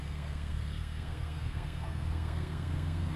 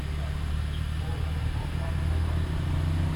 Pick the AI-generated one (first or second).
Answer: first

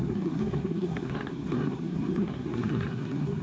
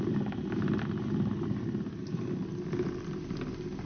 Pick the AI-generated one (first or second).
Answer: first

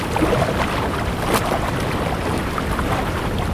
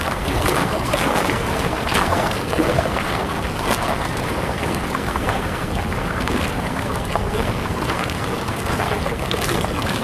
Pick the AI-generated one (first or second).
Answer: second